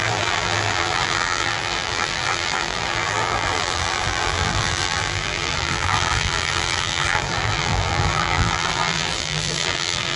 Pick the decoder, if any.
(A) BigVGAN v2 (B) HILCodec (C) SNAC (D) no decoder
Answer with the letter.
A